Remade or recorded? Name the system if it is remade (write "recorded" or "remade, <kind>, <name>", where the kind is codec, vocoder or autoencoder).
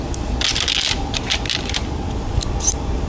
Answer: recorded